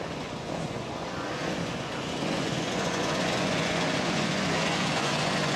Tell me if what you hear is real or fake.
fake